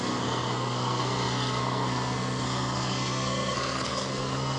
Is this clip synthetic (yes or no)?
yes